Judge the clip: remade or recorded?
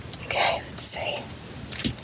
recorded